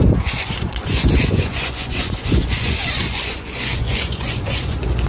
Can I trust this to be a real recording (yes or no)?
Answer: no